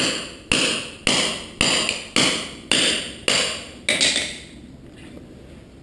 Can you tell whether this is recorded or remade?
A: recorded